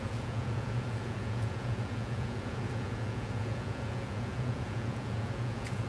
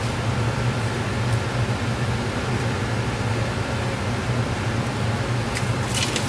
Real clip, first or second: second